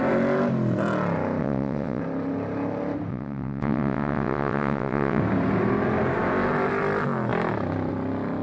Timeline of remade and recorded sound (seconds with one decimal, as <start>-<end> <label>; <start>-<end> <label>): 0.0-1.4 recorded; 1.4-2.0 remade; 2.0-3.1 recorded; 3.1-5.2 remade; 5.2-8.4 recorded